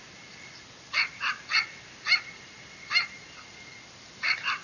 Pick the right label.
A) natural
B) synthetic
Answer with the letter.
A